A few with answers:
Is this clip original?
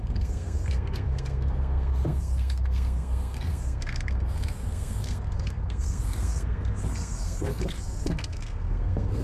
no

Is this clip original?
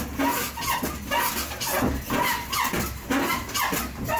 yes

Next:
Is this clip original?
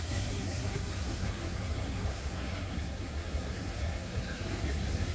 no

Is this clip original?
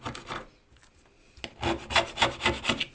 yes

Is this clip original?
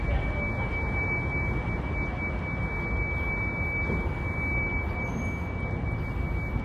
yes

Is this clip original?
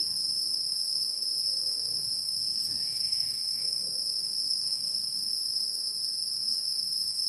no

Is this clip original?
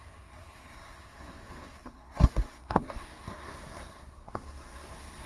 no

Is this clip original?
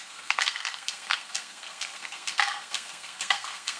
no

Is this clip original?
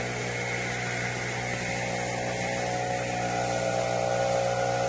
yes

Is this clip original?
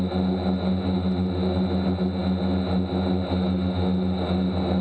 yes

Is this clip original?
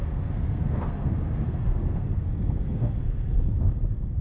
no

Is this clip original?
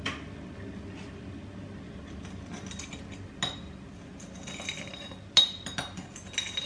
yes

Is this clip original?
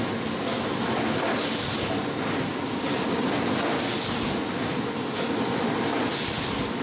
yes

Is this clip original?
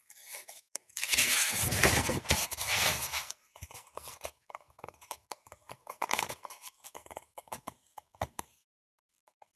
no